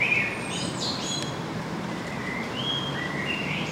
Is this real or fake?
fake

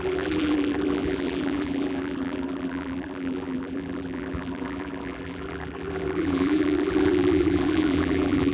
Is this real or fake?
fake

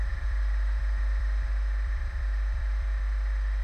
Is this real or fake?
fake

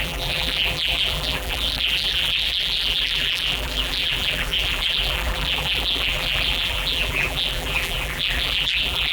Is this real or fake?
fake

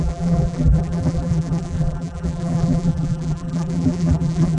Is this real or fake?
fake